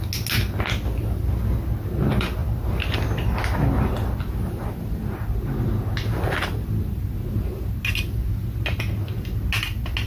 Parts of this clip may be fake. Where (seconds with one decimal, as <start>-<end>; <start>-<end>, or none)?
none